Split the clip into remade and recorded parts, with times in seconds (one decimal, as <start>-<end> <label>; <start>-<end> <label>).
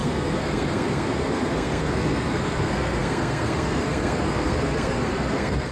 0.0-5.7 remade